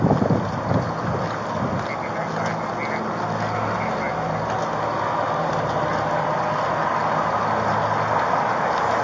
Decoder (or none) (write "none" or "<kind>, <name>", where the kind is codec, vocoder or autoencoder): none